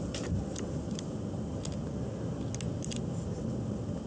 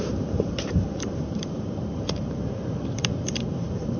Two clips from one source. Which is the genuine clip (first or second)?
first